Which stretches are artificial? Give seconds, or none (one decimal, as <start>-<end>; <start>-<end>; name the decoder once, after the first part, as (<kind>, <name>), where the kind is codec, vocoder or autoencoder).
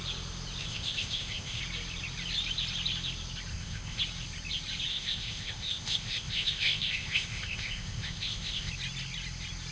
0.6-1.6 (codec, ZipCodec); 3.5-4.0; 4.9-8.7